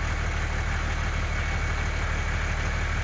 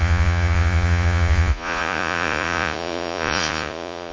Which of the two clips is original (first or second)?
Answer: first